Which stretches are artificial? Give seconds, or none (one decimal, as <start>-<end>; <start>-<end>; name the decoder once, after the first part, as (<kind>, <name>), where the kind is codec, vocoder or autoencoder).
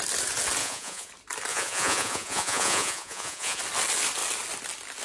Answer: 0.6-1.1 (vocoder, Vocos); 1.5-3.6